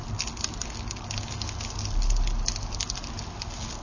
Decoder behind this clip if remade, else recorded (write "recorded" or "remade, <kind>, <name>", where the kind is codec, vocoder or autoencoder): recorded